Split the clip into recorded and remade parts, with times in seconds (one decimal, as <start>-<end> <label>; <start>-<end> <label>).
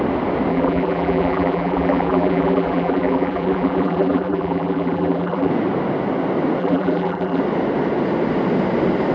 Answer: 0.0-0.5 recorded; 0.5-5.5 remade; 5.5-6.6 recorded; 6.6-7.4 remade; 7.4-9.1 recorded